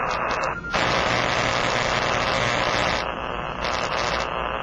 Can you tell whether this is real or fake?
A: real